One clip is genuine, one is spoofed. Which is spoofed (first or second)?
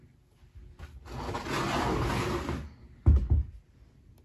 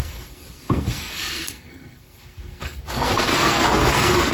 second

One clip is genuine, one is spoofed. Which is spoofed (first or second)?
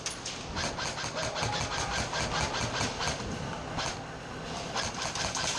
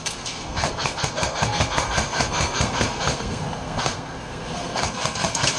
second